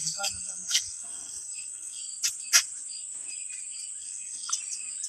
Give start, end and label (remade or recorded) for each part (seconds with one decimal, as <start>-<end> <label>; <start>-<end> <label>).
0.0-2.0 remade; 2.0-4.0 recorded; 4.0-4.5 remade; 4.5-5.1 recorded